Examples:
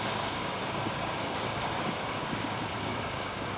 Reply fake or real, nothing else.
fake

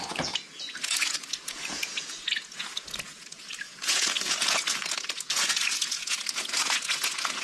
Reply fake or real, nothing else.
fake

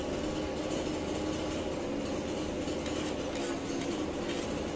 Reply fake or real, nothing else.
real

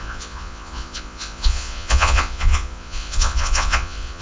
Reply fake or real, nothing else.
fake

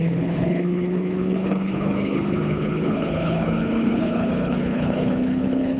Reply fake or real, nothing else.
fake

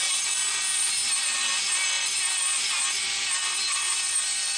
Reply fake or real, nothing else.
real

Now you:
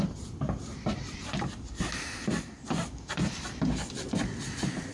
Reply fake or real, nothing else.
fake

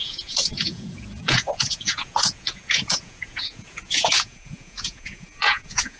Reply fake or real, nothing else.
fake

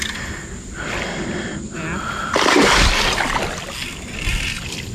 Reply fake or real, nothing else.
real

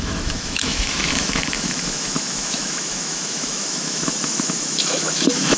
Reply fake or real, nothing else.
fake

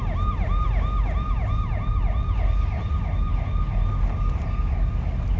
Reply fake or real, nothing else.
real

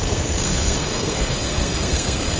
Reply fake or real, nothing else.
fake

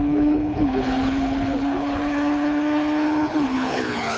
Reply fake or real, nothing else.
fake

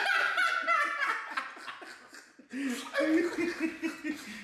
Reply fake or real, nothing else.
real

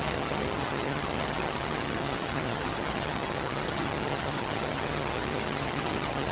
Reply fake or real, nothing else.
fake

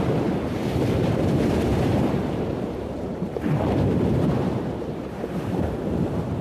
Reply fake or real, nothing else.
fake